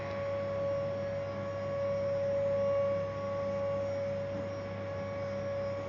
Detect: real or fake real